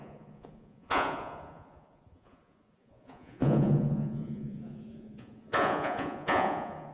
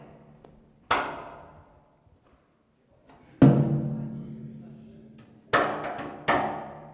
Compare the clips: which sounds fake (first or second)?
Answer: first